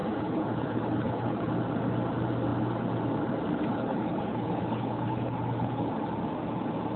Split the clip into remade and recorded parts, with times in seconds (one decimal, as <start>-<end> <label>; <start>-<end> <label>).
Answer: 0.0-1.5 remade; 1.5-3.7 recorded; 3.7-5.9 remade; 5.9-7.0 recorded

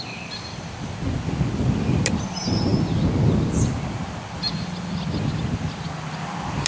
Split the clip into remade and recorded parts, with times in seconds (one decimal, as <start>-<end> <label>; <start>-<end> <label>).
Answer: 0.0-6.7 recorded

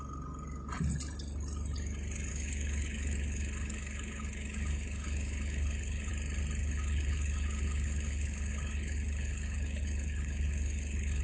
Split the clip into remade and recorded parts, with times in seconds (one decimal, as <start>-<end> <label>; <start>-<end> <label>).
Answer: 0.0-2.3 recorded; 2.3-6.1 remade; 6.1-6.6 recorded; 6.6-11.2 remade

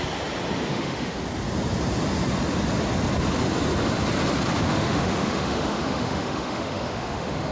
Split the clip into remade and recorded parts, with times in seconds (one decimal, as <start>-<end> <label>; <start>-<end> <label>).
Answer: 0.0-0.7 recorded; 0.7-1.2 remade; 1.2-4.5 recorded; 4.5-7.5 remade

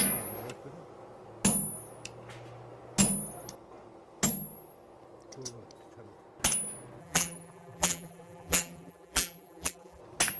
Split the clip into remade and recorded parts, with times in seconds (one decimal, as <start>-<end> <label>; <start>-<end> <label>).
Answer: 0.0-7.0 recorded; 7.0-10.0 remade; 10.0-10.4 recorded